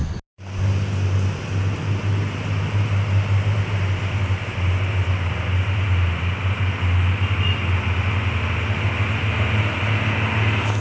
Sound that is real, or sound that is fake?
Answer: real